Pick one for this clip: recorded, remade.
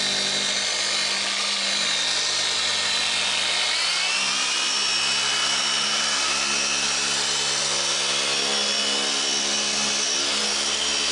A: recorded